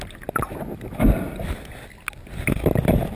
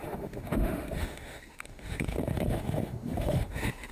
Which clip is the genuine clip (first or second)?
first